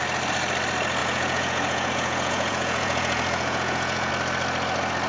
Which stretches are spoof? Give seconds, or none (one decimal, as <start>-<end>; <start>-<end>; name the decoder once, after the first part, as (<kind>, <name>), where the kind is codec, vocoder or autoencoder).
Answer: 1.0-4.1 (vocoder, Vocos)